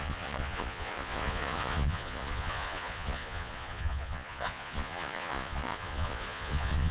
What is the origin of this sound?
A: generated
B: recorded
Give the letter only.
A